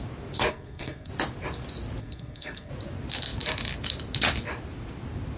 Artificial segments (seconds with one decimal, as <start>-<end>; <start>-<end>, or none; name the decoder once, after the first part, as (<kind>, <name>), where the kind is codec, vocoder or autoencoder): 0.5-1.1 (codec, SNAC); 2.0-2.7